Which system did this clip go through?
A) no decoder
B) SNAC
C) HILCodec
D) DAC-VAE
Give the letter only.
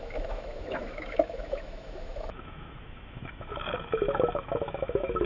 D